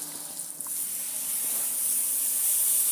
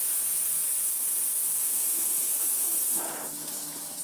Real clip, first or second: first